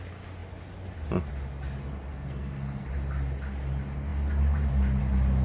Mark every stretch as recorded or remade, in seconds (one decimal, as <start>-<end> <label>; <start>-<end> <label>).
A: 0.0-2.1 recorded; 2.1-2.9 remade; 2.9-5.4 recorded